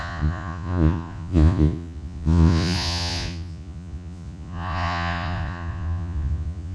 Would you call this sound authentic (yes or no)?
no